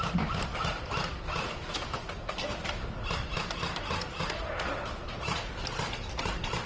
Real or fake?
real